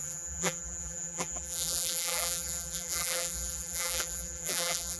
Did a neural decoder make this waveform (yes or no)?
yes